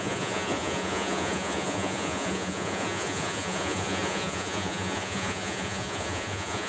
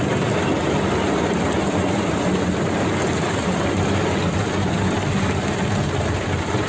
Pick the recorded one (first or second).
second